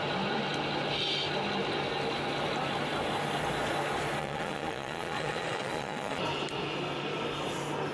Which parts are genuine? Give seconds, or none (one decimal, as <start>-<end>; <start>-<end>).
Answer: 0.0-4.2; 6.2-7.9